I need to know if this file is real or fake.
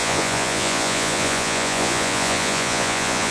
fake